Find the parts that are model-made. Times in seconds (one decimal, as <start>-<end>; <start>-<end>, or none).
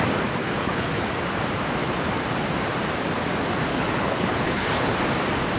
0.4-1.1; 3.7-5.0